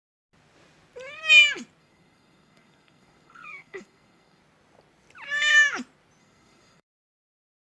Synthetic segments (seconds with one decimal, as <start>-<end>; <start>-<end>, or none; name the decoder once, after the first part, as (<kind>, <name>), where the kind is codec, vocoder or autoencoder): 1.8-4.4 (codec, SNAC); 6.2-7.7